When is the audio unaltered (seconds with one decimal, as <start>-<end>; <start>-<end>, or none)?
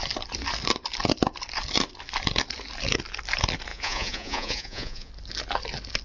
0.0-3.7; 5.1-6.0